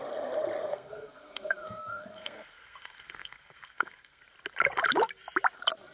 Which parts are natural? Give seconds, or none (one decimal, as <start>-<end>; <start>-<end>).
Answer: 0.0-0.7; 4.2-5.9